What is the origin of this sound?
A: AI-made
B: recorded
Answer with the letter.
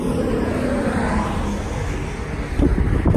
B